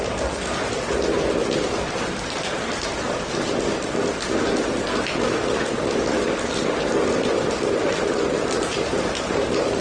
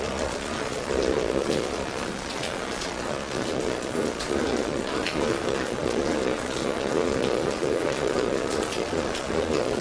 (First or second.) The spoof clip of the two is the second